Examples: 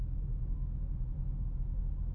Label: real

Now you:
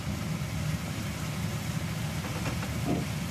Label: real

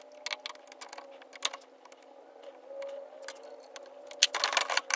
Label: real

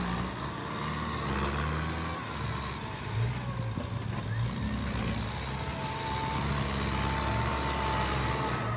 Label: real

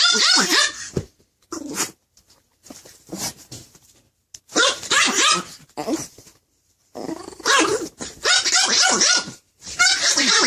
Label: fake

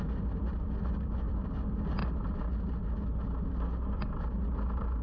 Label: real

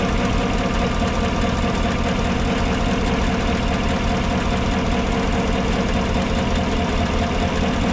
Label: real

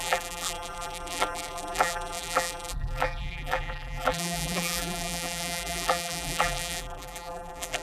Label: fake